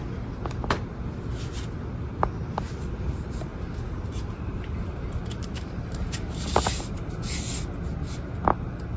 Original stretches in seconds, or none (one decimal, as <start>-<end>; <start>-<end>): 0.0-3.5; 7.1-9.0